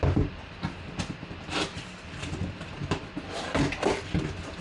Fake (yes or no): no